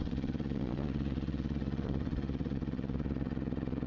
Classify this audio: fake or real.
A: fake